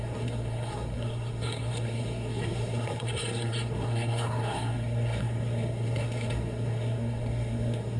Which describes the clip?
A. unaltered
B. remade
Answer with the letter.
B